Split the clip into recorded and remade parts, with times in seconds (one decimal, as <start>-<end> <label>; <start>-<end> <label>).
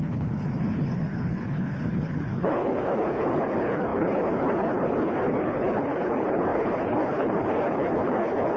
0.0-8.6 remade